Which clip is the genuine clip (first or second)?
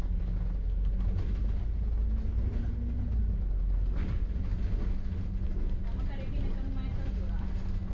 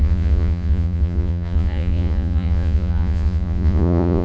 first